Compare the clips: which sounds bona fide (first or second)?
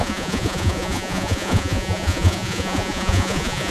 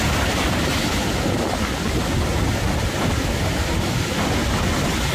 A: second